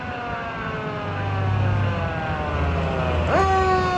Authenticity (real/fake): real